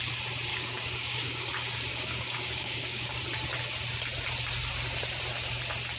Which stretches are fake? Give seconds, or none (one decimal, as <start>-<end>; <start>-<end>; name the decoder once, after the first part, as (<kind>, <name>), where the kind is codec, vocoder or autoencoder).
0.5-1.5 (codec, DAC); 1.9-3.2